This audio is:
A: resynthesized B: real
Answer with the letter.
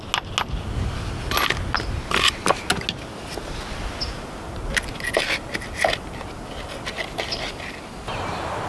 B